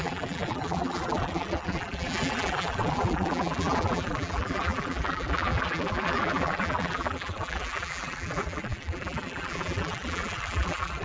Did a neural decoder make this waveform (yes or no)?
yes